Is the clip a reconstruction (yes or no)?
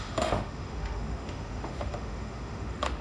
yes